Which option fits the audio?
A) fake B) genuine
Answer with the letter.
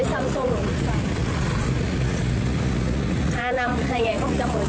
A